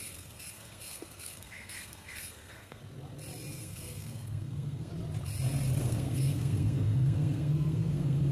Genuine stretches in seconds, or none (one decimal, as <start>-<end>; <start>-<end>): 2.8-3.5; 4.9-5.8